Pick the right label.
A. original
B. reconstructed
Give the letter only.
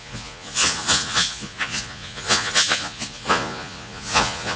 B